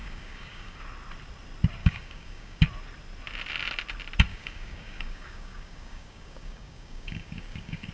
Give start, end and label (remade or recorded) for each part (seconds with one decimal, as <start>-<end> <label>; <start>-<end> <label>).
0.0-0.8 remade; 0.8-1.8 recorded; 1.8-2.6 remade; 2.6-4.3 recorded; 4.3-7.9 remade